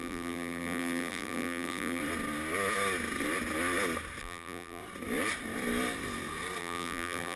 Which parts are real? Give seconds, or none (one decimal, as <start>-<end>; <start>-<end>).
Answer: 2.0-4.2; 4.8-6.6